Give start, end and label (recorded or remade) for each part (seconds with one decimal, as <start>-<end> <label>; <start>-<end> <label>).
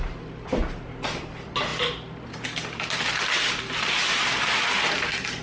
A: 0.0-5.4 recorded